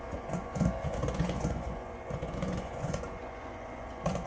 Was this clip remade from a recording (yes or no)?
yes